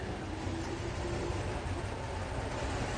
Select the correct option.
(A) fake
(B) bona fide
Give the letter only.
B